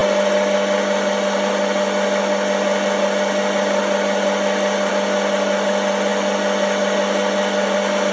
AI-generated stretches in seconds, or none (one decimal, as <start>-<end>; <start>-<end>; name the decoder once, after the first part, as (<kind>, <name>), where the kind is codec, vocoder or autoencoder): none